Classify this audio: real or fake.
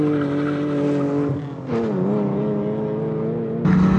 real